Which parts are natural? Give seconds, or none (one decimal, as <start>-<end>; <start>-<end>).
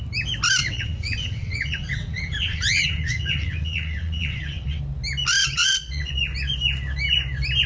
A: 0.0-0.6; 4.8-5.4; 6.1-7.7